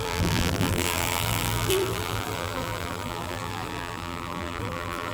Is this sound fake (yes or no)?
yes